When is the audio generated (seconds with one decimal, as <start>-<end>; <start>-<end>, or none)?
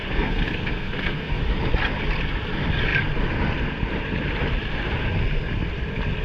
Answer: 0.0-1.4